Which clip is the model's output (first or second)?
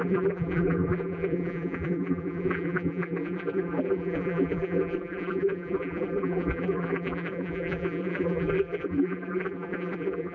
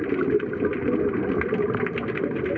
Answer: first